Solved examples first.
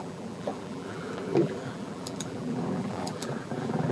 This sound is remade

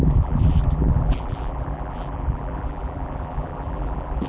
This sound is remade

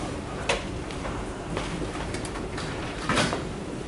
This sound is remade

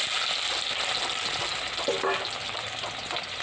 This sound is recorded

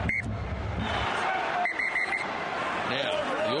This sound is remade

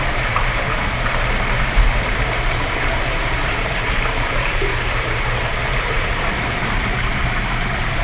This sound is remade